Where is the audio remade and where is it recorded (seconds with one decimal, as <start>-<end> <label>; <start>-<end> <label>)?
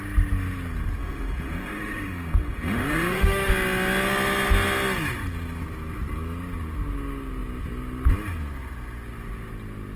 0.0-1.0 recorded; 1.0-3.5 remade; 3.5-10.0 recorded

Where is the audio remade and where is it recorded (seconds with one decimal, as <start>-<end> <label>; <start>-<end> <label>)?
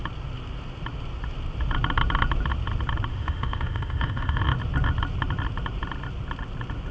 0.0-3.1 recorded; 3.1-4.4 remade; 4.4-6.9 recorded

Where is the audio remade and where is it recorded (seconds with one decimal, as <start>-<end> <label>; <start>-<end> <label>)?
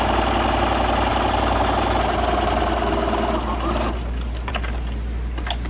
0.0-5.7 recorded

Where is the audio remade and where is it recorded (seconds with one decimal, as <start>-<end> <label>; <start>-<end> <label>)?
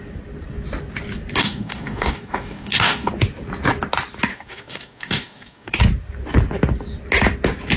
0.0-1.4 recorded; 1.4-3.1 remade; 3.1-4.3 recorded; 4.3-5.8 remade; 5.8-7.8 recorded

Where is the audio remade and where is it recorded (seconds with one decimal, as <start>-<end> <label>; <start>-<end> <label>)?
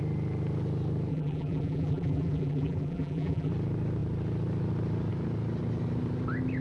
0.0-1.1 recorded; 1.1-3.5 remade; 3.5-6.6 recorded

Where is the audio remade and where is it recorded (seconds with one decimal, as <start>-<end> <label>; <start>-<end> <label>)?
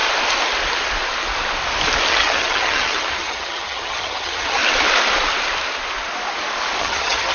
0.0-2.1 recorded; 2.1-4.6 remade; 4.6-6.8 recorded; 6.8-7.3 remade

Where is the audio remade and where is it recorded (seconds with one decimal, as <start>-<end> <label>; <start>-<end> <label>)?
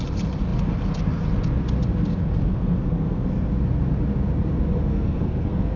0.0-2.4 recorded; 2.4-3.5 remade; 3.5-4.9 recorded; 4.9-5.8 remade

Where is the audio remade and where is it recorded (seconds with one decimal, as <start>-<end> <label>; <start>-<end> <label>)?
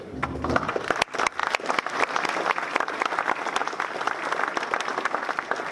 0.0-3.6 recorded; 3.6-4.6 remade; 4.6-5.7 recorded